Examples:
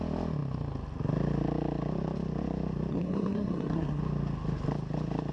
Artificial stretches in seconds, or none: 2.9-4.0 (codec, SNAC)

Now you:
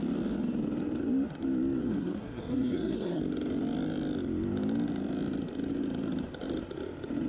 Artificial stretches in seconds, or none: 1.8-3.2 (codec, SNAC)

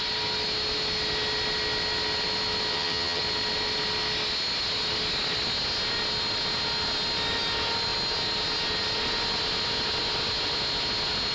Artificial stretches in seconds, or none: 2.7-3.2 (vocoder, HiFi-GAN)

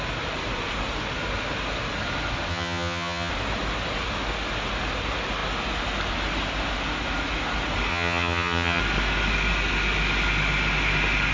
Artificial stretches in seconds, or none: 2.5-3.3 (vocoder, HiFi-GAN); 7.9-8.8